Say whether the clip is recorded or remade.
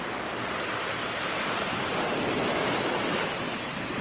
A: recorded